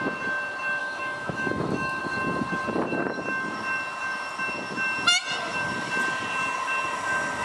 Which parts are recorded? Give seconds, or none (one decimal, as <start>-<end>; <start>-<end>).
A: 0.0-0.8; 2.0-7.4